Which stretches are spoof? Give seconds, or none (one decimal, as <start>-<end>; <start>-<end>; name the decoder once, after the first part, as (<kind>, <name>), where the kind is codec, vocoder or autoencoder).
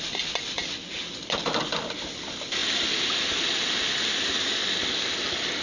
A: none